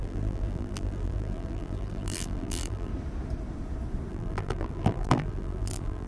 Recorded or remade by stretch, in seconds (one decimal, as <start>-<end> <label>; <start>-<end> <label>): 0.0-2.9 remade; 2.9-4.1 recorded; 4.1-6.1 remade